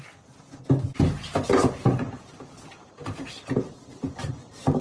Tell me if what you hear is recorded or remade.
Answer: remade